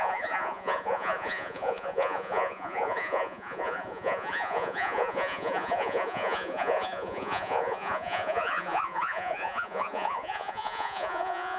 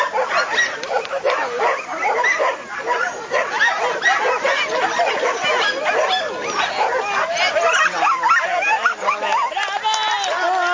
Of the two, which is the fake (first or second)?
first